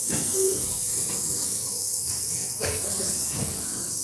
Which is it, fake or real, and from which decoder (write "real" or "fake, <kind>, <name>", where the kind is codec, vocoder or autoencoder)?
fake, codec, SNAC